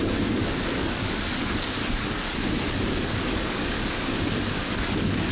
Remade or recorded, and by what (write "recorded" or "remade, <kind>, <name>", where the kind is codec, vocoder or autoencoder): remade, codec, DAC